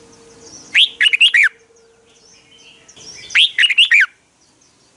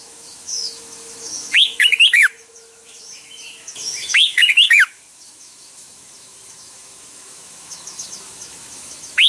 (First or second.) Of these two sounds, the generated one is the second